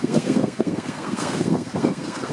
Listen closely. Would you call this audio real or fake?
fake